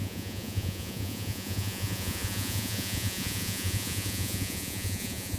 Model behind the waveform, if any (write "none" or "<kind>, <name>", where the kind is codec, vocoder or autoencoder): vocoder, Vocos